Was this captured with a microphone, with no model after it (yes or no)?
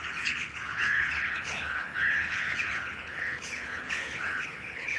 no